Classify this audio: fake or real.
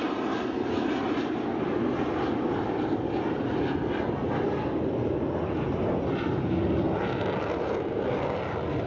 real